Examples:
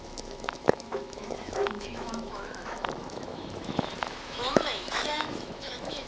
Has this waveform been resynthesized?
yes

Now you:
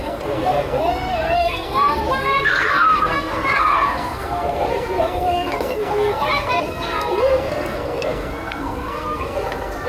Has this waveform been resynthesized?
yes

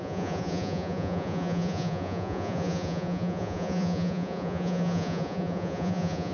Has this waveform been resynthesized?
yes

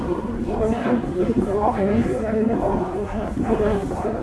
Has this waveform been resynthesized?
yes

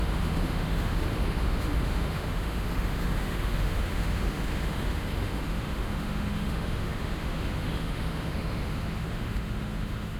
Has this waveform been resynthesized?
yes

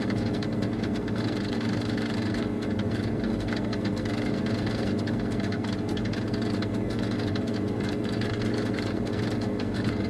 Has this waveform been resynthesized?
yes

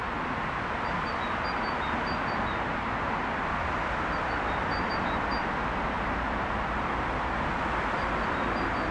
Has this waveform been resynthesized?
no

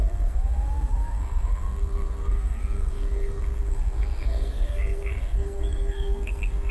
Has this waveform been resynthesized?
yes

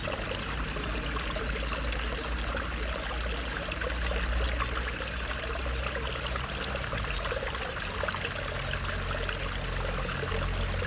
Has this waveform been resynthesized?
no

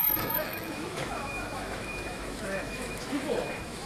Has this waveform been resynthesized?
yes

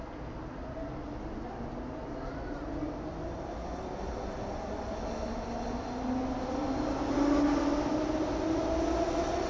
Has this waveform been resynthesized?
no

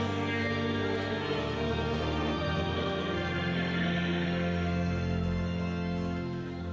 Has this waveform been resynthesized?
yes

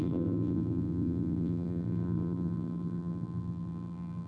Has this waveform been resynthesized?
yes